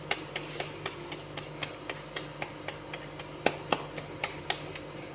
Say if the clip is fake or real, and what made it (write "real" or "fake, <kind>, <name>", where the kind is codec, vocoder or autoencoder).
real